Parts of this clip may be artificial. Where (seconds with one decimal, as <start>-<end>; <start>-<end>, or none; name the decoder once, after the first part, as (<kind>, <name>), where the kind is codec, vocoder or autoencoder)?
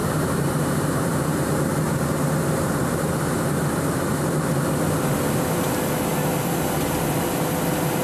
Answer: 0.0-3.5 (vocoder, BigVGAN v2)